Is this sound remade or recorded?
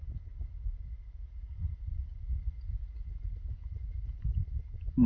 recorded